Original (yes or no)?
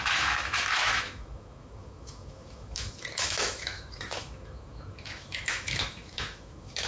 no